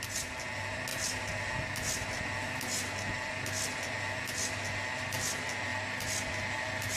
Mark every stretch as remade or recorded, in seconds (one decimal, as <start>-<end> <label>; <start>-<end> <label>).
0.0-7.0 recorded